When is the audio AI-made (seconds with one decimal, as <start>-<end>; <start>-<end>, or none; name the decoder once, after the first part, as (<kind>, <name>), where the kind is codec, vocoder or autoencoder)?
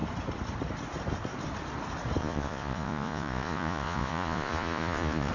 2.2-5.3 (vocoder, Vocos)